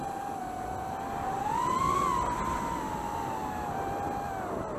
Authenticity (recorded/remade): recorded